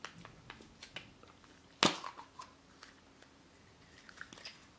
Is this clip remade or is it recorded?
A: recorded